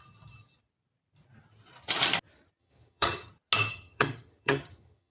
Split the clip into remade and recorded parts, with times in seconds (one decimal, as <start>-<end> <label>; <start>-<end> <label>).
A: 0.0-2.6 recorded; 2.6-3.3 remade; 3.3-3.7 recorded; 3.7-5.1 remade